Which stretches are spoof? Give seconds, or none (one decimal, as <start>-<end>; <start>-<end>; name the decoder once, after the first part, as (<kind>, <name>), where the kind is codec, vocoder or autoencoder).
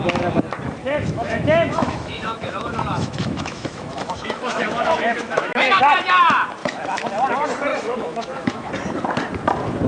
0.8-5.8 (autoencoder, DAC-VAE); 6.6-7.1; 7.7-8.7